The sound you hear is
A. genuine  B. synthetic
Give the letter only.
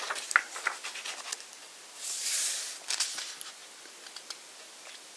A